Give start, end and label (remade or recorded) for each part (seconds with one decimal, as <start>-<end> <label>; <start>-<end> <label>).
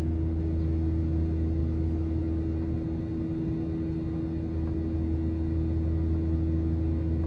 0.0-1.6 recorded; 1.6-2.2 remade; 2.2-7.3 recorded